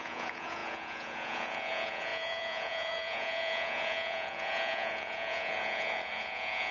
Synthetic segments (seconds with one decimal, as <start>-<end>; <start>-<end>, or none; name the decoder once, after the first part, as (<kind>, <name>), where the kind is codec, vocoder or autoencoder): 0.0-6.7 (vocoder, Vocos)